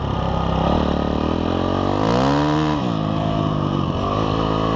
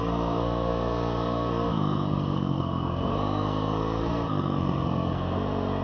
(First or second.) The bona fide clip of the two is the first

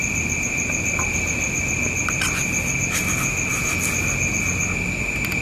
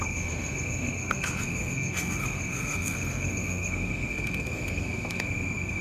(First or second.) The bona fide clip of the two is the first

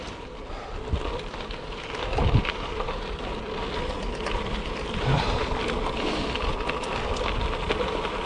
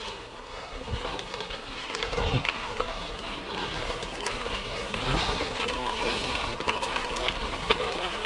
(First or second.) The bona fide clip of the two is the first